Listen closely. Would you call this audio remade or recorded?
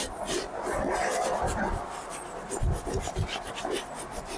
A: recorded